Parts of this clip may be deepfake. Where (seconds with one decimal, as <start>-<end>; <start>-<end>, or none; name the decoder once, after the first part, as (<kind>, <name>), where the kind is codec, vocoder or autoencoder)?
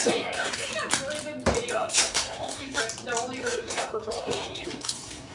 0.0-0.7 (codec, SNAC); 1.7-2.8; 3.4-5.3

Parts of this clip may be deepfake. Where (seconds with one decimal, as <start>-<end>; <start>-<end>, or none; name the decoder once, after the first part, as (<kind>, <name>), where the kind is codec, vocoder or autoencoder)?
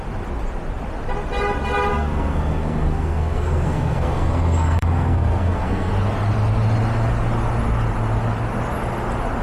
1.9-5.9 (codec, SNAC)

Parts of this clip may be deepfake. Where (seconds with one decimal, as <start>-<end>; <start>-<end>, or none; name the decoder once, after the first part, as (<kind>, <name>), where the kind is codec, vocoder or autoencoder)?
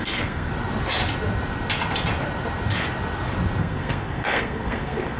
0.0-0.5 (codec, SNAC); 3.6-5.2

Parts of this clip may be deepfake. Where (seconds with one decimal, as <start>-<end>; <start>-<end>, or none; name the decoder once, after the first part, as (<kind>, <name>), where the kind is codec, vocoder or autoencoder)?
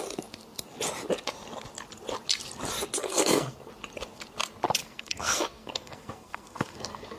3.0-3.7 (codec, SNAC); 4.8-7.2